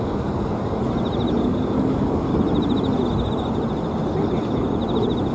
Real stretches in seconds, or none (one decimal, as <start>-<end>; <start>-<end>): 0.8-1.4; 2.3-5.3